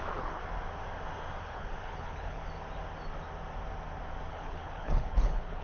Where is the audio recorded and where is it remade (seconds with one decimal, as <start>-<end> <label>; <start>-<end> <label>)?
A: 0.0-0.4 remade; 0.4-1.4 recorded; 1.4-2.4 remade; 2.4-4.3 recorded; 4.3-5.6 remade